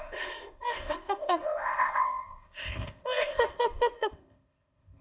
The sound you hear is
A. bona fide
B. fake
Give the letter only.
B